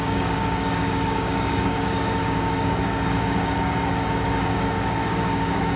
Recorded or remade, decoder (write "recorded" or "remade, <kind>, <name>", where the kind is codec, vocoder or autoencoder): remade, codec, DAC